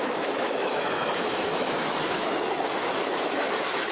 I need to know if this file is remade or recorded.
remade